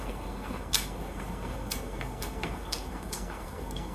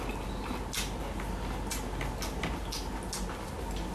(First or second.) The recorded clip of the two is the second